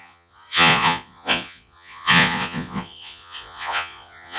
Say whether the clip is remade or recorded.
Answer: remade